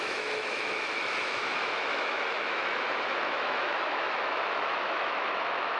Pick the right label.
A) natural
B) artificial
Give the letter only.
B